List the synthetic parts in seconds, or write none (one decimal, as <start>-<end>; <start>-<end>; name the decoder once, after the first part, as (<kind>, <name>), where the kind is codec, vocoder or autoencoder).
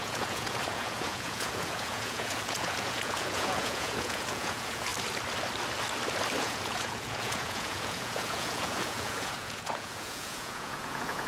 0.0-4.9 (vocoder, Vocos); 6.4-11.3